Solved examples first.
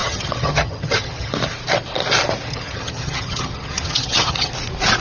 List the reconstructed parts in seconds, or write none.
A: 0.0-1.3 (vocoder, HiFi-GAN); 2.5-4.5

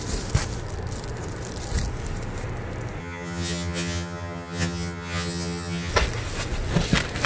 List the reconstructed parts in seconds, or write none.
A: 3.0-5.9 (vocoder, HiFi-GAN)

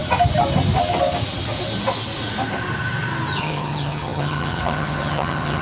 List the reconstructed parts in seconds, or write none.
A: 3.4-5.6 (vocoder, HiFi-GAN)

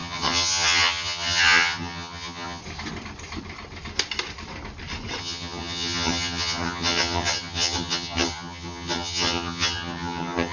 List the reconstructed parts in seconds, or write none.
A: 0.0-2.6 (vocoder, HiFi-GAN); 5.2-10.5